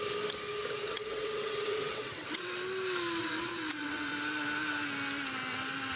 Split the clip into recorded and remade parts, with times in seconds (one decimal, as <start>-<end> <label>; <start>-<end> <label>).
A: 0.0-0.8 recorded; 0.8-2.5 remade; 2.5-3.2 recorded; 3.2-4.1 remade; 4.1-6.0 recorded